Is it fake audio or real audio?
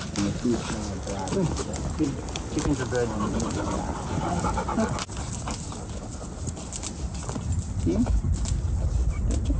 real